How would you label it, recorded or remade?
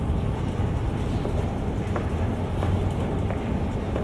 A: recorded